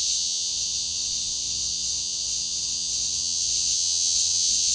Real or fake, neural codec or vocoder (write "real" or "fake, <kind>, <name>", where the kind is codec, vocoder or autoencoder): fake, vocoder, WaveNeXt